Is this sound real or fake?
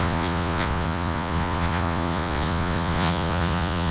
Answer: fake